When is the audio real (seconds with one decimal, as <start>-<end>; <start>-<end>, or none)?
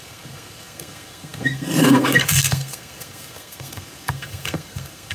none